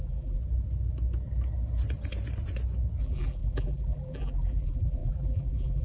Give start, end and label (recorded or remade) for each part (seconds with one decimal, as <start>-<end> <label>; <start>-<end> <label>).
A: 0.0-0.4 remade; 0.4-3.0 recorded; 3.0-5.8 remade